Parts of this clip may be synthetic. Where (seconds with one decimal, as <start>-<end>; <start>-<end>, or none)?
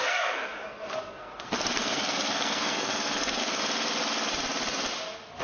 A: 0.0-3.4